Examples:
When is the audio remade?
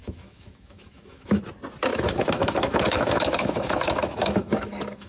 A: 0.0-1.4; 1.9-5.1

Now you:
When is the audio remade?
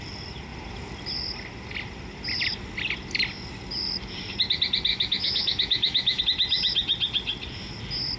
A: 4.9-6.2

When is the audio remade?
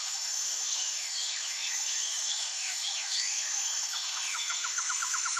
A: 0.0-5.4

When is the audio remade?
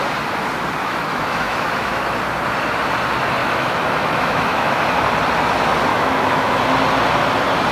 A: 0.8-2.0; 3.4-4.8; 5.9-6.6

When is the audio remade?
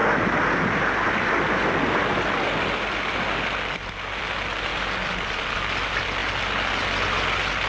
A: none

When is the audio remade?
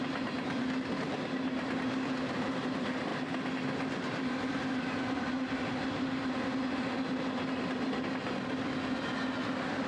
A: none